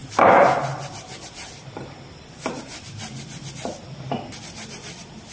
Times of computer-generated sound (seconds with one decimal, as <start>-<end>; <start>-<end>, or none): none